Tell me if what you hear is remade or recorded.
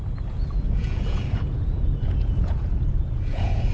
remade